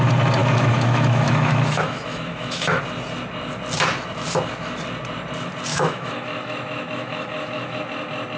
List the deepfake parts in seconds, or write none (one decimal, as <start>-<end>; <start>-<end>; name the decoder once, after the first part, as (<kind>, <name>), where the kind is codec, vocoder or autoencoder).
0.4-2.8 (autoencoder, DAC-VAE); 5.7-7.8